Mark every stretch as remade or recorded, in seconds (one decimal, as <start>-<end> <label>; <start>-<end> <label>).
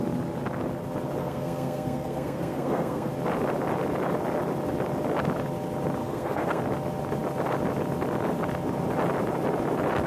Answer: 0.0-1.2 recorded; 1.2-3.1 remade; 3.1-6.0 recorded; 6.0-6.6 remade; 6.6-10.1 recorded